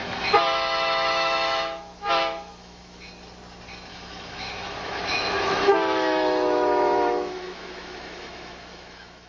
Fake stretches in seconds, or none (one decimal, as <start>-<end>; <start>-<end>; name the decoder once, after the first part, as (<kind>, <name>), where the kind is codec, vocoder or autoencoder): 0.0-3.1 (autoencoder, DAC-VAE); 3.9-9.3